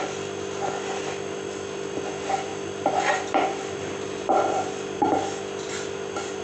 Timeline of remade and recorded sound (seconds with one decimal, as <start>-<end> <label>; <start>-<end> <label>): 0.0-6.4 recorded